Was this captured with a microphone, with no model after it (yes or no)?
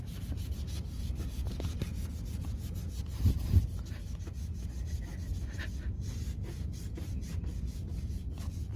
yes